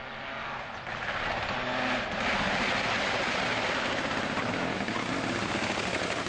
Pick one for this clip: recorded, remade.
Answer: recorded